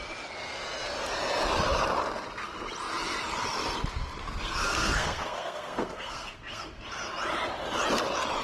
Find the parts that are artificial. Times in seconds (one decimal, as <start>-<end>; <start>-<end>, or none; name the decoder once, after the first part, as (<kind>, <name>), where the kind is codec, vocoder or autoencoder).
4.2-6.6 (codec, SNAC)